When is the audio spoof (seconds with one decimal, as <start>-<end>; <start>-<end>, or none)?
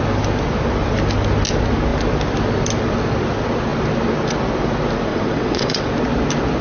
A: 5.1-5.9